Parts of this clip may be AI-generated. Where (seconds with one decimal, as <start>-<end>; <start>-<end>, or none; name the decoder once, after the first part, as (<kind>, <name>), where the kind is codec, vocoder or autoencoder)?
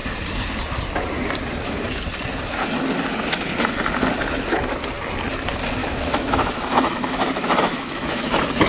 5.8-8.7 (autoencoder, DAC-VAE)